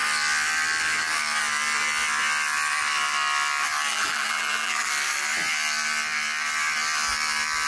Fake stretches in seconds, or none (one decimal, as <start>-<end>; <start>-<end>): 3.9-4.9